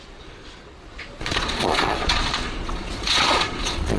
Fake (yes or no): yes